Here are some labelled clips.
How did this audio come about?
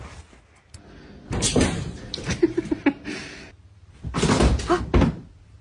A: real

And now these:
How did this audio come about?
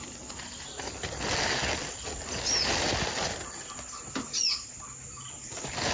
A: real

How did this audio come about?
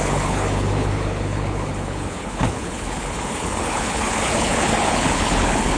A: fake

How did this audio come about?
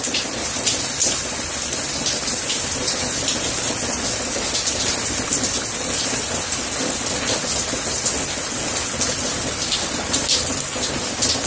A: real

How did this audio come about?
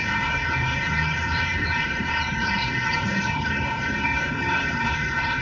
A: fake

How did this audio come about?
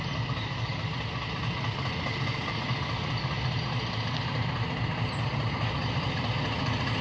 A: real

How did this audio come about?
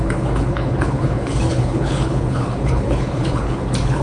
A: fake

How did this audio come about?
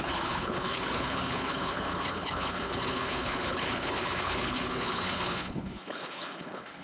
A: fake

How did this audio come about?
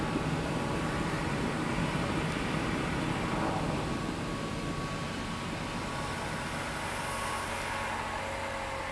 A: real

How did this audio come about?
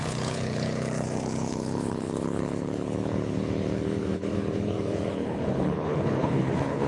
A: fake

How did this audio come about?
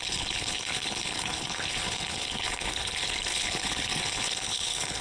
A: fake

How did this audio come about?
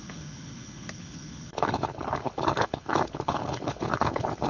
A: fake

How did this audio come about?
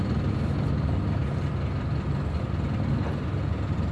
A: real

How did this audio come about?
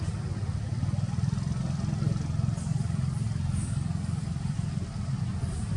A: real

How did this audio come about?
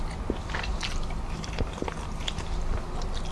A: real